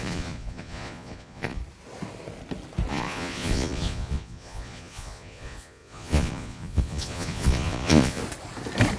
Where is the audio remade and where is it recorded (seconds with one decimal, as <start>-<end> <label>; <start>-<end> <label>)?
0.0-1.6 remade; 1.6-2.9 recorded; 2.9-8.2 remade; 8.2-9.0 recorded